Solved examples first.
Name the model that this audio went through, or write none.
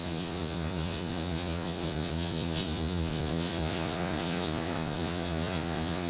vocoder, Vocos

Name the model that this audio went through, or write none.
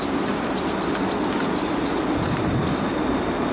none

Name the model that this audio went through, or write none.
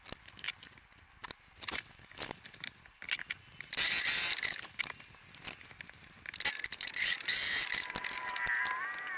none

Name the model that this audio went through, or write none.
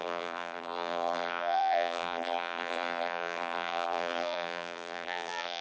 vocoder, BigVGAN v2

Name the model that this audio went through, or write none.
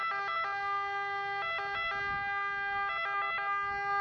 none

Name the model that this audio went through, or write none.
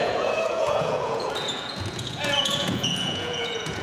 vocoder, Vocos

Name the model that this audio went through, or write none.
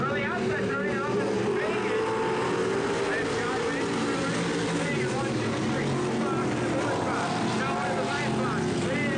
none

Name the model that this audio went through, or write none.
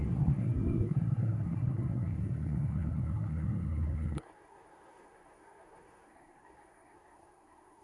codec, SNAC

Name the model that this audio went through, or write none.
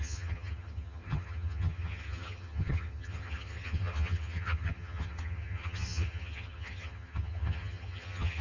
vocoder, HiFi-GAN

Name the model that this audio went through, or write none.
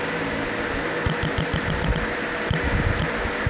none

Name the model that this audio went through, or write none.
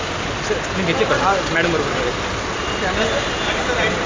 none